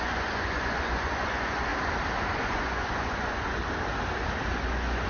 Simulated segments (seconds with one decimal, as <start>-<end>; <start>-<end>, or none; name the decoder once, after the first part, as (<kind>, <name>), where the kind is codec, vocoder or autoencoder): 0.0-1.7 (vocoder, Vocos); 2.3-3.6; 4.6-5.1